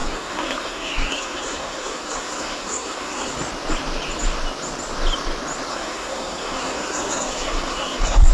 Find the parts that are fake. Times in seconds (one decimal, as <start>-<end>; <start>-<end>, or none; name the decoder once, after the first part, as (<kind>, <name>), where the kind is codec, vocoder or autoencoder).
0.0-3.3 (codec, SNAC); 5.7-8.3